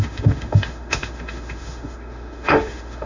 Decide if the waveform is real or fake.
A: fake